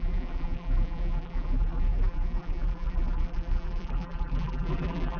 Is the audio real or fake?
fake